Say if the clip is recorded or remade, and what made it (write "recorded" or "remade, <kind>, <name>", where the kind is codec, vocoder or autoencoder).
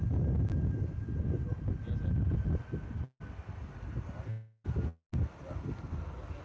recorded